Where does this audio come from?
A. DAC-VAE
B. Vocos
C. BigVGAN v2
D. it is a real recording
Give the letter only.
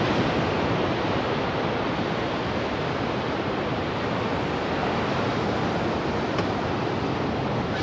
D